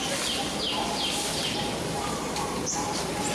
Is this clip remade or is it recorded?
recorded